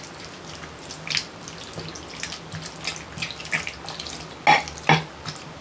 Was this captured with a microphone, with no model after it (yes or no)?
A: yes